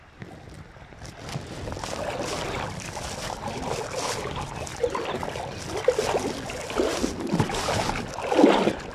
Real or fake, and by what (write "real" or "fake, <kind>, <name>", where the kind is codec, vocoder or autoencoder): real